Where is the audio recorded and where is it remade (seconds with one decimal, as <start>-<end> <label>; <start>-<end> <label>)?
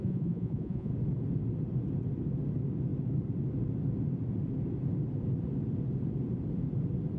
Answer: 0.0-0.9 remade; 0.9-7.2 recorded